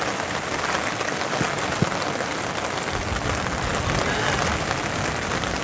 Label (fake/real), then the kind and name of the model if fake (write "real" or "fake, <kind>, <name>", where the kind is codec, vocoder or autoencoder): real